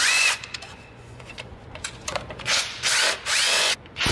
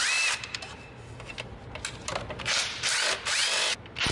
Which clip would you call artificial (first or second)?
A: first